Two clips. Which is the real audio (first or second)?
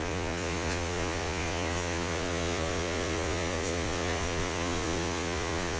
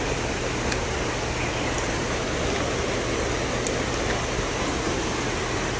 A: second